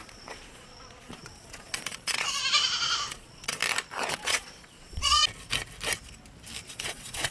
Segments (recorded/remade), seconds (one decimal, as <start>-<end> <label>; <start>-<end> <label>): 0.0-2.4 remade; 2.4-3.1 recorded; 3.1-3.6 remade; 3.6-4.1 recorded; 4.1-5.2 remade; 5.2-6.7 recorded; 6.7-7.3 remade